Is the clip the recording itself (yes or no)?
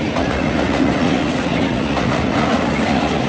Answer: no